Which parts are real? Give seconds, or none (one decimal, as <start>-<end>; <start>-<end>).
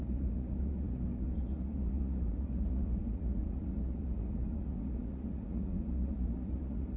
none